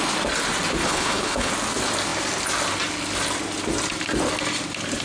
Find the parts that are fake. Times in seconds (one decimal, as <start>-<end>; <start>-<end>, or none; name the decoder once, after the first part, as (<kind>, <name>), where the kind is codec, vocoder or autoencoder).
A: 0.8-1.5 (codec, HILCodec)